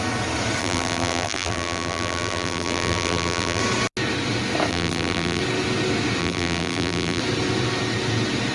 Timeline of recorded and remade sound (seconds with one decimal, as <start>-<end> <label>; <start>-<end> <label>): 0.0-0.6 recorded; 0.6-3.6 remade; 3.6-4.7 recorded; 4.7-5.4 remade; 5.4-6.2 recorded; 6.2-7.2 remade; 7.2-8.5 recorded